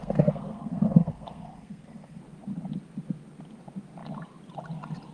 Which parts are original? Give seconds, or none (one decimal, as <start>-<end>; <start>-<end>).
2.2-5.1